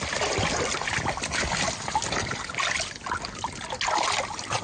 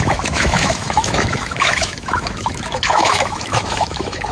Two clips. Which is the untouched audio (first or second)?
first